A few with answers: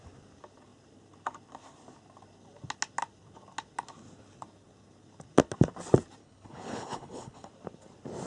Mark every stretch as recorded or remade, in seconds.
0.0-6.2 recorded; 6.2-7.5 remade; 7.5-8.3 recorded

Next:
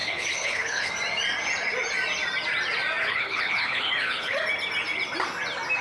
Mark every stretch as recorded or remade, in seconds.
0.0-0.9 remade; 0.9-3.0 recorded; 3.0-4.4 remade; 4.4-5.8 recorded

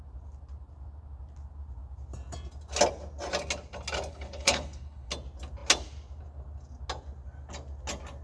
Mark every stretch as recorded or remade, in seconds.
0.0-4.1 recorded; 4.1-5.1 remade; 5.1-8.2 recorded

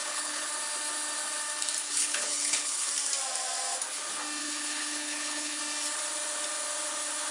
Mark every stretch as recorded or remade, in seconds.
0.0-0.5 remade; 0.5-1.8 recorded; 1.8-2.9 remade; 2.9-4.4 recorded; 4.4-5.6 remade; 5.6-7.3 recorded

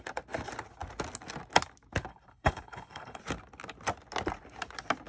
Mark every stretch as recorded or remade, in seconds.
0.0-2.1 recorded; 2.1-3.2 remade; 3.2-5.1 recorded

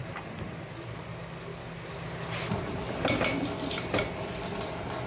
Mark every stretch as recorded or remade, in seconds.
0.0-5.1 recorded